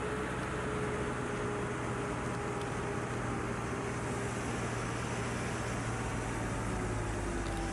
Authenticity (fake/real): real